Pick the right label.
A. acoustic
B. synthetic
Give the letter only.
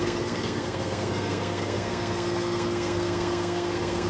B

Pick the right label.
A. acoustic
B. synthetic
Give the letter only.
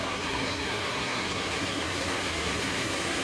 B